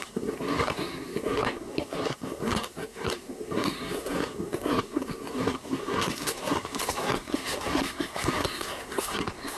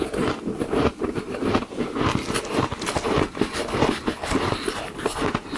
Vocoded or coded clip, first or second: first